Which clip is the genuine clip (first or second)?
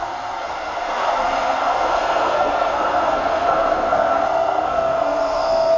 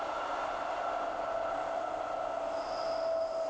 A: second